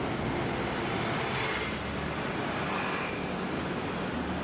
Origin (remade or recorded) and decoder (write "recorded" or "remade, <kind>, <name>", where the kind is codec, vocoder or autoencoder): recorded